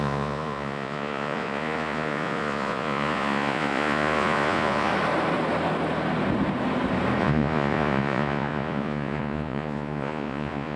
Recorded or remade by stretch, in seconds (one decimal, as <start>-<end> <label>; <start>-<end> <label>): 0.0-4.9 remade; 4.9-7.2 recorded; 7.2-10.8 remade

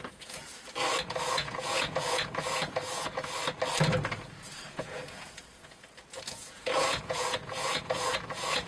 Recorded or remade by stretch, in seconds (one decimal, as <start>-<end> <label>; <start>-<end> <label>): 0.0-0.5 remade; 0.5-1.0 recorded; 1.0-3.2 remade; 3.2-4.1 recorded; 4.1-8.7 remade

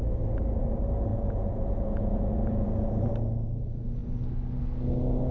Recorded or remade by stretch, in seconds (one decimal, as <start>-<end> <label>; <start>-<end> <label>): 0.0-1.1 recorded; 1.1-3.1 remade; 3.1-5.3 recorded

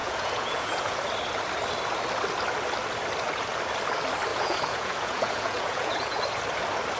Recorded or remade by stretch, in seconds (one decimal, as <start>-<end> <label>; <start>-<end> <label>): 0.0-1.0 remade; 1.0-4.3 recorded; 4.3-6.2 remade; 6.2-7.0 recorded

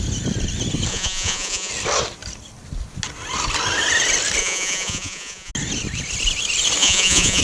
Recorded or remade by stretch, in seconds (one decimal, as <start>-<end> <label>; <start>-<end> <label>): 0.0-0.9 recorded; 0.9-1.7 remade; 1.7-4.4 recorded; 4.4-5.5 remade; 5.5-6.8 recorded; 6.8-7.4 remade